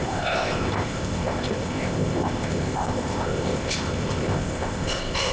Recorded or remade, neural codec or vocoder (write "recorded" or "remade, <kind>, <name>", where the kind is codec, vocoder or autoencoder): remade, codec, ZipCodec